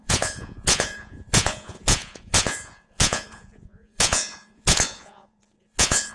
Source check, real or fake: fake